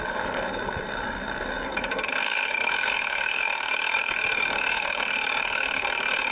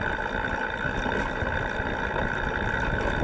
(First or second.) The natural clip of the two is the second